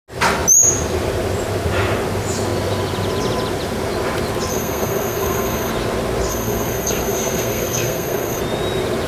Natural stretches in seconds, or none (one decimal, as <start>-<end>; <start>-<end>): 0.0-4.5; 5.7-6.3; 8.4-9.1